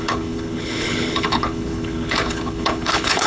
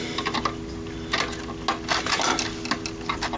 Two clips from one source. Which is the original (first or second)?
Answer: second